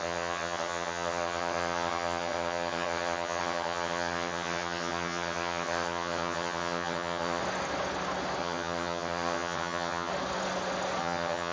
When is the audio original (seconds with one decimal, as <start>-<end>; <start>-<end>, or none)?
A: 7.4-8.4; 10.1-11.0

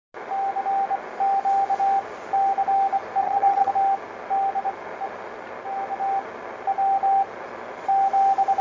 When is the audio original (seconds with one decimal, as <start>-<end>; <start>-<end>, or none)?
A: 0.0-3.2; 3.7-8.6

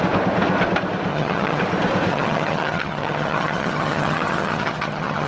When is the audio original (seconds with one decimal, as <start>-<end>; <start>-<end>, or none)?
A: 0.0-1.1; 1.6-2.1